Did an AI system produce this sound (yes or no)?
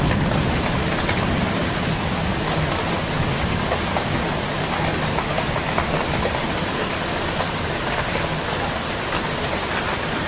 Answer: no